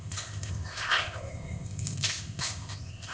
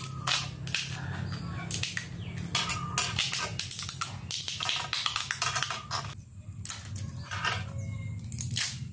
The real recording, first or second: second